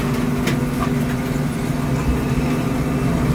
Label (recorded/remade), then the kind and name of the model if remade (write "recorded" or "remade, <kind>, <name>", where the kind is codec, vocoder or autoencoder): recorded